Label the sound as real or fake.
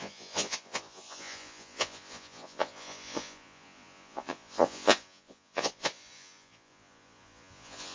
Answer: fake